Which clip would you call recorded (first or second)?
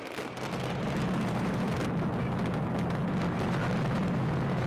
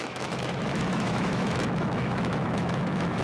first